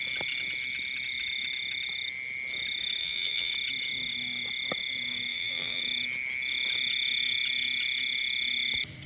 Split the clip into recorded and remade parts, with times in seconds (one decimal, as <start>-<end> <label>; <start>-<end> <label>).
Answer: 0.0-3.0 recorded; 3.0-3.5 remade; 3.5-5.3 recorded; 5.3-5.8 remade; 5.8-9.1 recorded